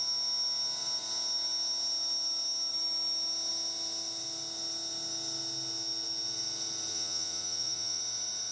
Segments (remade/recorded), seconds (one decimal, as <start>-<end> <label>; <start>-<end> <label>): 0.0-6.9 recorded; 6.9-8.0 remade; 8.0-8.5 recorded